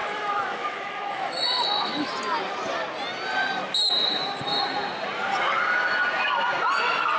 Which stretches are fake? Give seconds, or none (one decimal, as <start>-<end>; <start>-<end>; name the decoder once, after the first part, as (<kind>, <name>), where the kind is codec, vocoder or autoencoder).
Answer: 0.0-2.1 (autoencoder, DAC-VAE); 3.8-4.6